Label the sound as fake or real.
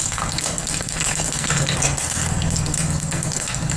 fake